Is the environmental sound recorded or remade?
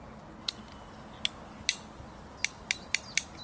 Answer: recorded